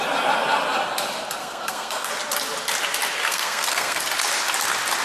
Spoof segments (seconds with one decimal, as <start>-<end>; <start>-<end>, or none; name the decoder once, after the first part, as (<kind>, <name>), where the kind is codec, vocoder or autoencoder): 1.4-2.1 (codec, SNAC); 3.2-4.0